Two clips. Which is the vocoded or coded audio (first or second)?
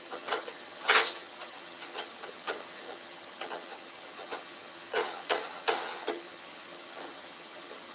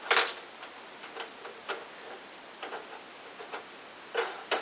first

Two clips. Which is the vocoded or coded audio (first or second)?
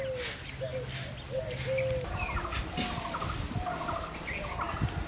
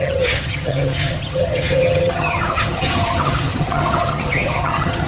second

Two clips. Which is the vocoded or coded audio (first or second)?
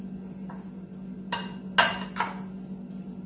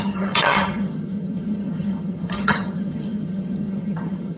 second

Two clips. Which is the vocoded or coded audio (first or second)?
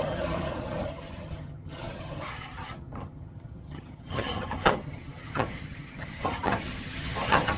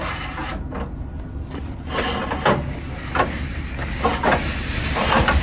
first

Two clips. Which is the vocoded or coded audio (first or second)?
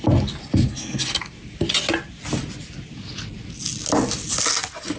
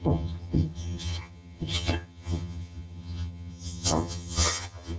second